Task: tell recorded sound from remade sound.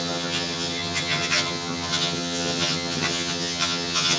remade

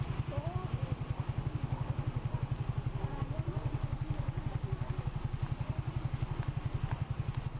recorded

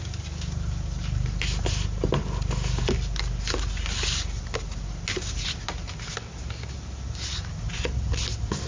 recorded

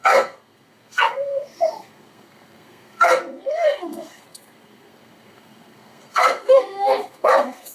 remade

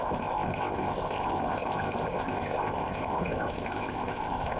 remade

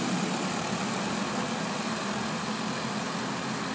recorded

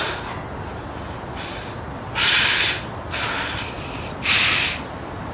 recorded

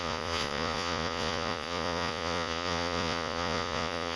remade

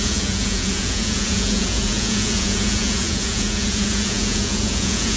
remade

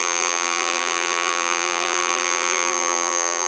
remade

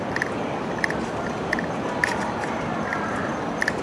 recorded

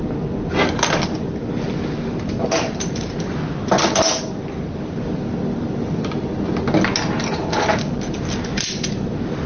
recorded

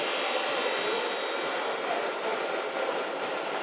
recorded